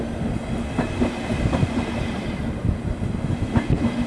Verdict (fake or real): real